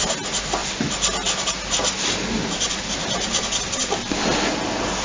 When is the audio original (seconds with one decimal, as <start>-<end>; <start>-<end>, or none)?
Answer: 0.0-5.0